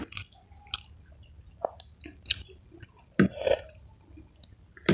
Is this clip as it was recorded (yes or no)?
yes